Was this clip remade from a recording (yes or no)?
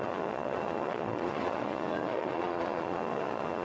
yes